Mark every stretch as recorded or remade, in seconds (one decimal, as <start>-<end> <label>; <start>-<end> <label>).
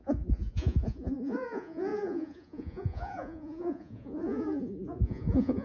0.0-5.6 remade